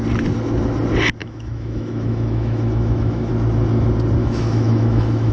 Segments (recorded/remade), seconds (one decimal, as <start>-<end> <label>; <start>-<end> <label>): 0.0-1.2 recorded; 1.2-3.3 remade; 3.3-4.2 recorded; 4.2-5.3 remade